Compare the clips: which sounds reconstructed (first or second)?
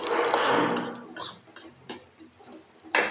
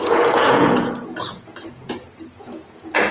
second